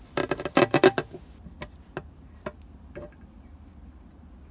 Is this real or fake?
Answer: real